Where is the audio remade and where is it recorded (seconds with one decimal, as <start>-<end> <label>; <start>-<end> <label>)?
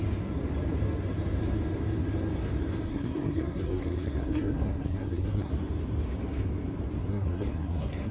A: 0.0-2.9 recorded; 2.9-5.5 remade; 5.5-7.1 recorded; 7.1-8.1 remade